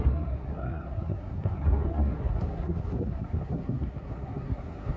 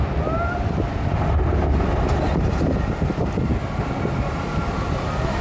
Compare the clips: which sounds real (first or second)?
second